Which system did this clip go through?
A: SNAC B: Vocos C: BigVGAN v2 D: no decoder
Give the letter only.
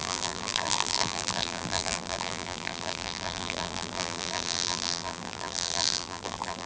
C